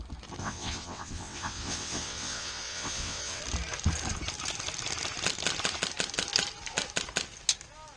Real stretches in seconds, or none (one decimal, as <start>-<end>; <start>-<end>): 0.0-0.4; 3.4-8.0